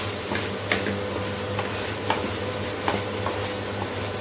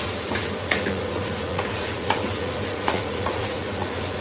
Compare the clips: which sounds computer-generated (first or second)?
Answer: second